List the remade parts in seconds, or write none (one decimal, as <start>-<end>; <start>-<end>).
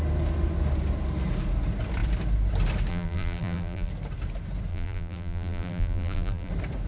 2.9-3.9; 4.7-6.5